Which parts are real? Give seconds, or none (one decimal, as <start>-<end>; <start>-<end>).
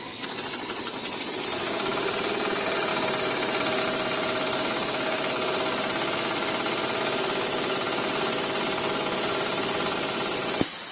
0.0-10.9